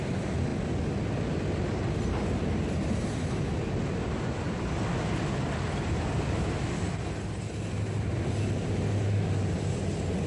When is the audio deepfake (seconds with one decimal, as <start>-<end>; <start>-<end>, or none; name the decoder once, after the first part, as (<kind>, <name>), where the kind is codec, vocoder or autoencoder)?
none